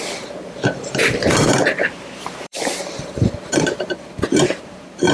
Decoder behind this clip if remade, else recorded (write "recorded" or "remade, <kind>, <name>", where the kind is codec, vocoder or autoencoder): remade, vocoder, BigVGAN v2